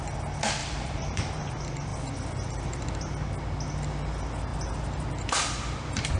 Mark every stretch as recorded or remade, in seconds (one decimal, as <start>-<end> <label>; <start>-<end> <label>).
0.0-0.6 recorded; 0.6-1.4 remade; 1.4-1.9 recorded; 1.9-2.9 remade; 2.9-4.5 recorded; 4.5-6.2 remade